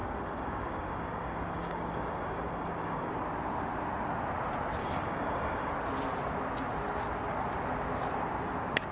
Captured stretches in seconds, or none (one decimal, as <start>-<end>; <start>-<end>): 3.1-4.8; 5.7-8.9